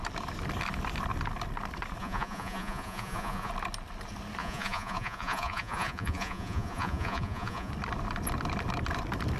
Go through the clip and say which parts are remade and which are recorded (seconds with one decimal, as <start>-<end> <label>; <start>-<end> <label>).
0.0-2.0 recorded; 2.0-3.5 remade; 3.5-4.4 recorded; 4.4-7.7 remade; 7.7-9.4 recorded